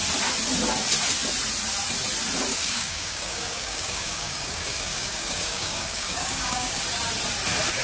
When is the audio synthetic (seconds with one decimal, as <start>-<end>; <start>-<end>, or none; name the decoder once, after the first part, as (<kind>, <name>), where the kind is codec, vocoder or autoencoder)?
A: 2.5-6.8 (codec, DAC)